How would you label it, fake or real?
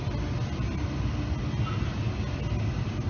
real